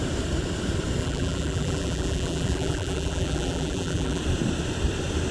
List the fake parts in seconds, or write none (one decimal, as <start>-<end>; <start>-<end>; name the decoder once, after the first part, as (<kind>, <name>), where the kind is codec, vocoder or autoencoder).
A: 1.0-4.2 (vocoder, BigVGAN v2)